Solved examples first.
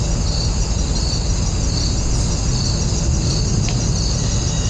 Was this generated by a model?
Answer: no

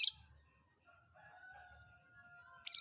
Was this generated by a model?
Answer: no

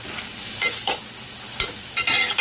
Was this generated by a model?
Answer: no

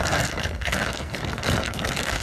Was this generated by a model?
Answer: yes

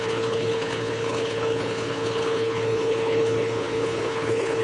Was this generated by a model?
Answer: yes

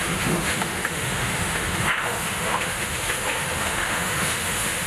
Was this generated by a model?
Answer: yes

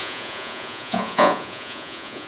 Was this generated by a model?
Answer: yes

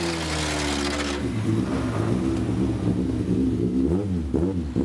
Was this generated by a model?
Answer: no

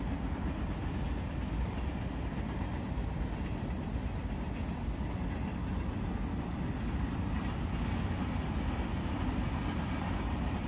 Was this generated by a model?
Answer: no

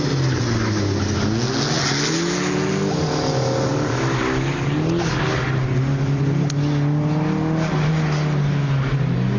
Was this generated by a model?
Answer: no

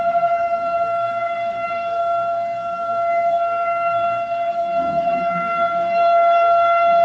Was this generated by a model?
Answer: yes